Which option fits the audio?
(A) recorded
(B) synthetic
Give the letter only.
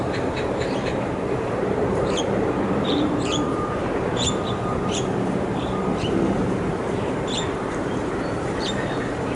B